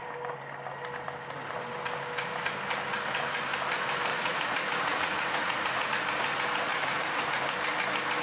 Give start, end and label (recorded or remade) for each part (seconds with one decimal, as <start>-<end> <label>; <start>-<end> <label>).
0.0-4.1 recorded; 4.1-5.9 remade; 5.9-6.7 recorded; 6.7-7.2 remade; 7.2-8.2 recorded